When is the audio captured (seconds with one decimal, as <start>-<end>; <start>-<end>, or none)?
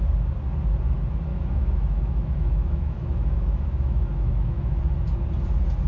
0.0-1.3; 4.8-5.9